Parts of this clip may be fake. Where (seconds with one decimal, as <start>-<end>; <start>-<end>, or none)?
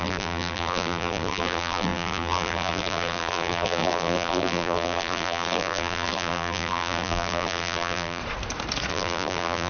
0.0-8.2; 8.9-9.7